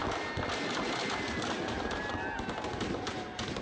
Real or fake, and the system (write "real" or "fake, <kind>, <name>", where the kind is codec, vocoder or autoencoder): real